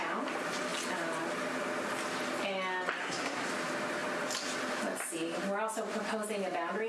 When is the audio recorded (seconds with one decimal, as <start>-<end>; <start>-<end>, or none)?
0.0-3.0; 3.5-6.9